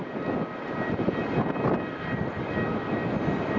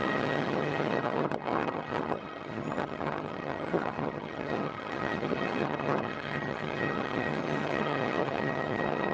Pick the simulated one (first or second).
second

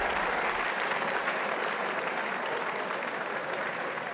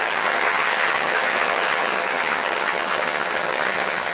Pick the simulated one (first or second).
second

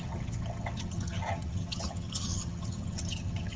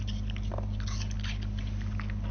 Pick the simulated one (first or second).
first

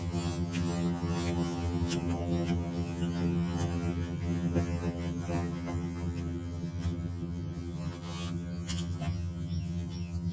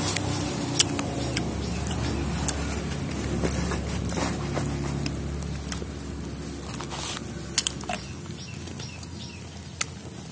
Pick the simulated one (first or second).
first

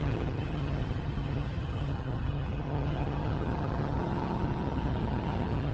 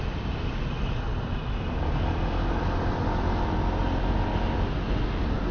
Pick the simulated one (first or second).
first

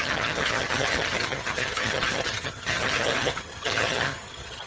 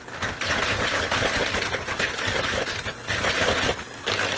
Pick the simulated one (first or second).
first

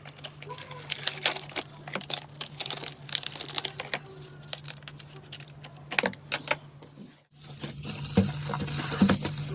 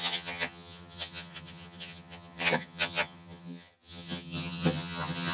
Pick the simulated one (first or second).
second